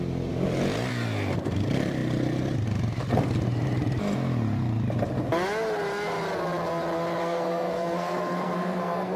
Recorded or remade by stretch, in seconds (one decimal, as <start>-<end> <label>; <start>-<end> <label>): 0.0-7.2 recorded; 7.2-9.2 remade